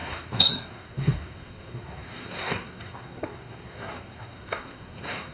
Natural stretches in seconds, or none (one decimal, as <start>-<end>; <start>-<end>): none